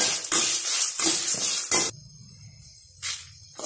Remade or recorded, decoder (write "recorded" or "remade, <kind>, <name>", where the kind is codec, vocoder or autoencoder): recorded